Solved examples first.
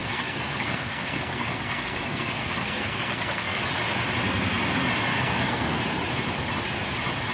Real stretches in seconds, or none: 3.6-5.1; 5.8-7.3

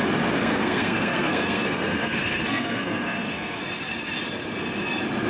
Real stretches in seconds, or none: 0.0-0.4; 3.6-5.3

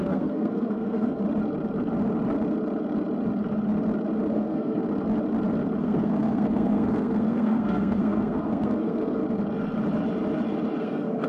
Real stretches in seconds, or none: 1.2-4.3; 4.8-5.8; 9.2-10.8

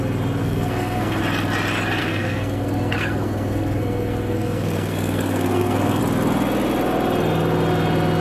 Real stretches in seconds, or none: 0.0-0.4; 1.2-2.0; 6.0-8.2

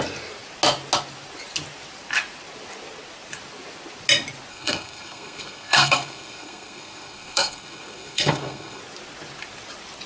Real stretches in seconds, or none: 0.0-4.5; 8.8-10.1

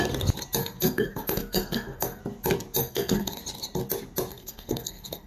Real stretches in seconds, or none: 0.0-0.6; 2.2-2.8; 3.4-4.3

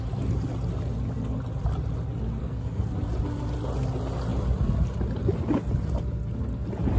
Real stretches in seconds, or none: 0.0-2.4; 2.9-7.0